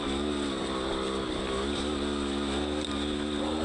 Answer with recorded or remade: recorded